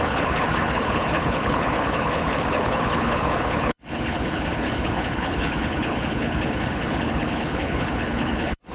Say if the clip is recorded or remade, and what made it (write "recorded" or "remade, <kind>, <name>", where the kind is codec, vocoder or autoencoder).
remade, codec, HILCodec